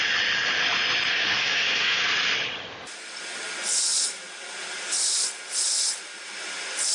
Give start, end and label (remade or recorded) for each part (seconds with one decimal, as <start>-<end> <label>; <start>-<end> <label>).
0.0-1.1 recorded; 1.1-2.0 remade; 2.0-6.9 recorded